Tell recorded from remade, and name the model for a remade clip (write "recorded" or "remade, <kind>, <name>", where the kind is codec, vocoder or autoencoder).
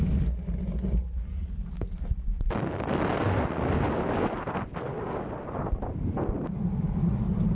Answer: recorded